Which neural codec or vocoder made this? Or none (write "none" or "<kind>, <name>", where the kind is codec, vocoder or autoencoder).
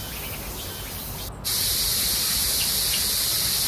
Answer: none